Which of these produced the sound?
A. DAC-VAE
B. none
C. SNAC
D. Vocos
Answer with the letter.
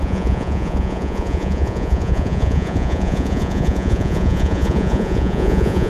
D